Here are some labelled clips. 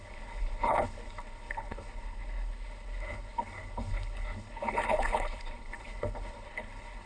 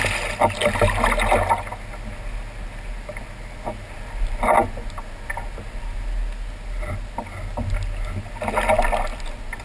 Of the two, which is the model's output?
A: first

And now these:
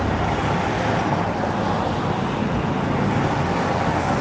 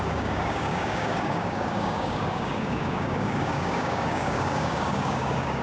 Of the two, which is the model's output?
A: second